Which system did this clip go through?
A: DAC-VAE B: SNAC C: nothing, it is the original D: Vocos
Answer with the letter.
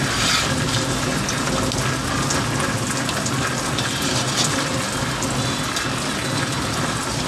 C